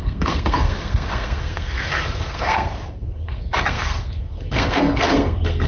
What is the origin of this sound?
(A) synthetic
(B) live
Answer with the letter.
A